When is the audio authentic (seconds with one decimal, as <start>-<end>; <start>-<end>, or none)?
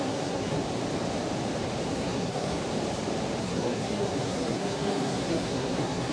0.6-1.9; 2.6-3.4